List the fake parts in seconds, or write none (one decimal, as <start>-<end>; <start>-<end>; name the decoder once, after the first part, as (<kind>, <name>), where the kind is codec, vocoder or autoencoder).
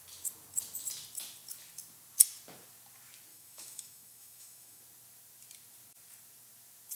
3.3-4.8 (autoencoder, DAC-VAE)